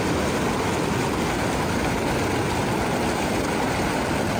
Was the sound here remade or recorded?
recorded